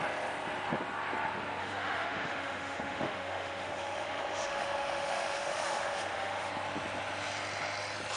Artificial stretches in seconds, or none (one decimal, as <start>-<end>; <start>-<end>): 1.6-6.5